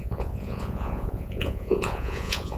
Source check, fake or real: fake